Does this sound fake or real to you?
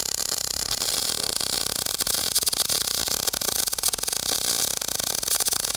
fake